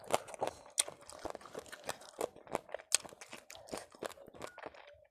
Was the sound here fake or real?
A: real